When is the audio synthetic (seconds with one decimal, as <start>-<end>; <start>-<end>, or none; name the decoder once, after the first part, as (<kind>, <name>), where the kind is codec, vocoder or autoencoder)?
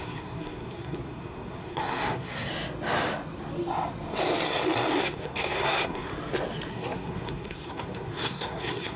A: 0.0-2.5 (codec, SNAC); 5.0-6.1; 6.7-9.0